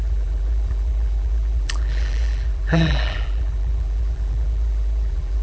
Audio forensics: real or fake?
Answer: fake